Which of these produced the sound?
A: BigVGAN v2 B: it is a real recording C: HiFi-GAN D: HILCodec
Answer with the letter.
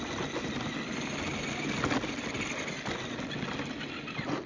B